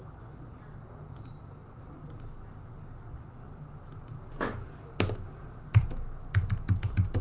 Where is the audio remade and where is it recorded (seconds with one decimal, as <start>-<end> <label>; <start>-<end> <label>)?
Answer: 0.0-7.2 recorded

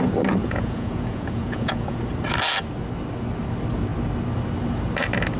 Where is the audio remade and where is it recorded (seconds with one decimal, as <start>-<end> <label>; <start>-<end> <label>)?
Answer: 0.0-0.4 recorded; 0.4-2.0 remade; 2.0-5.4 recorded

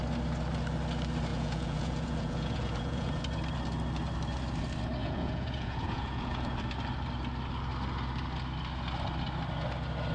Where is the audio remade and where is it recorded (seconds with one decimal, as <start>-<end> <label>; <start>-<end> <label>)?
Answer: 0.0-1.3 recorded; 1.3-3.2 remade; 3.2-5.0 recorded; 5.0-6.4 remade; 6.4-10.1 recorded